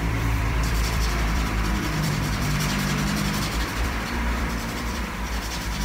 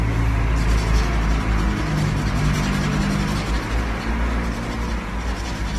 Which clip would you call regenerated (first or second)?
first